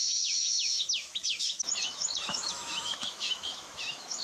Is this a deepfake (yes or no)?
yes